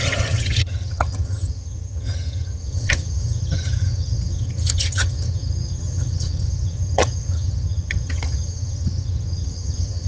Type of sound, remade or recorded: remade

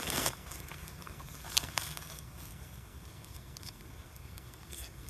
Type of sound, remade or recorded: remade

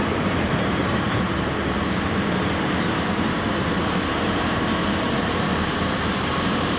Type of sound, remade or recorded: remade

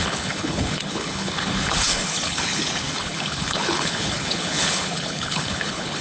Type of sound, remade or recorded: remade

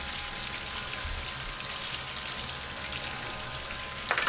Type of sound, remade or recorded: recorded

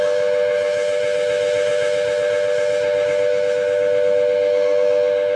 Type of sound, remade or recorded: remade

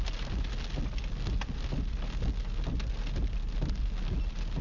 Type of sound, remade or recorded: recorded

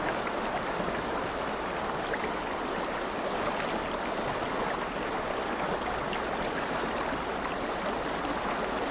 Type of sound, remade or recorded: recorded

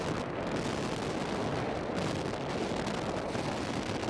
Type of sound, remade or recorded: recorded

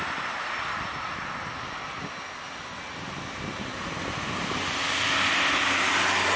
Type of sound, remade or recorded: recorded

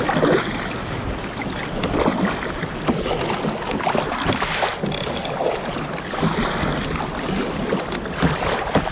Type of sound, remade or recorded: recorded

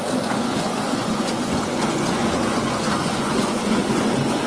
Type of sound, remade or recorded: remade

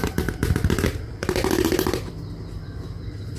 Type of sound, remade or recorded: remade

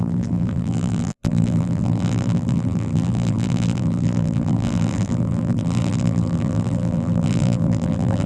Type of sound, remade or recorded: remade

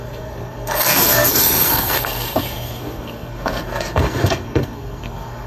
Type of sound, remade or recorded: remade